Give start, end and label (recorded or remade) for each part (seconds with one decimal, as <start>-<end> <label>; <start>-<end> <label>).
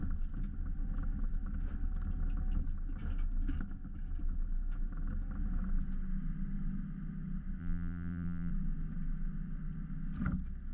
0.0-7.6 recorded; 7.6-8.5 remade; 8.5-10.7 recorded